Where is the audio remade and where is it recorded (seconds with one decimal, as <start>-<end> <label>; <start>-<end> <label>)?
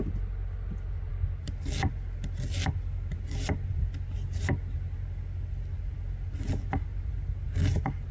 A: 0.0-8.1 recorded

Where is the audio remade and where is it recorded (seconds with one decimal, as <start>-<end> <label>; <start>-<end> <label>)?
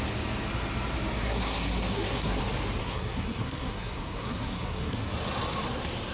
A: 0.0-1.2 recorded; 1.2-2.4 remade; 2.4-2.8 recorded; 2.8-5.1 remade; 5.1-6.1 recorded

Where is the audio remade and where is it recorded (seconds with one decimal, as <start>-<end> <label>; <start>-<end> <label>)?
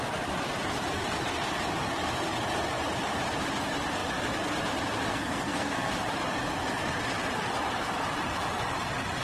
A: 0.0-5.1 recorded; 5.1-5.9 remade; 5.9-9.2 recorded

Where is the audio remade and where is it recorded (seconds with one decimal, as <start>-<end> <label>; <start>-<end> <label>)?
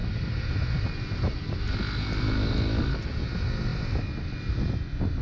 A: 0.0-5.2 recorded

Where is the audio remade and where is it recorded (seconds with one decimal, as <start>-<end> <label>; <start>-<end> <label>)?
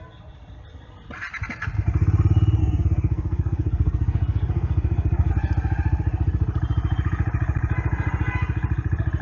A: 0.0-2.6 recorded; 2.6-5.3 remade; 5.3-9.2 recorded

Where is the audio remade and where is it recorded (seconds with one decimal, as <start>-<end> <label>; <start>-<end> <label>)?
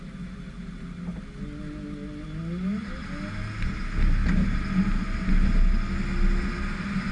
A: 0.0-7.1 recorded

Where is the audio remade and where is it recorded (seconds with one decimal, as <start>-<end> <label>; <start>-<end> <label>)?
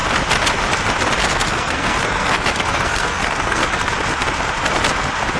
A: 0.0-1.2 recorded; 1.2-3.9 remade; 3.9-5.4 recorded